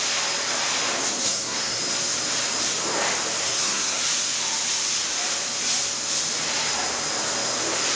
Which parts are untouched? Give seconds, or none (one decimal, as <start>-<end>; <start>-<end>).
0.0-1.2; 1.8-3.4; 4.0-8.0